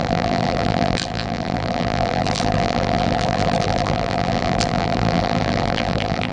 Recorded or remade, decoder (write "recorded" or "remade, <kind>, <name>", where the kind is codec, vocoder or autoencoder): remade, vocoder, BigVGAN v2